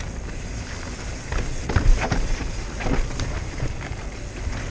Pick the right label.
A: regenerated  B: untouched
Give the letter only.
B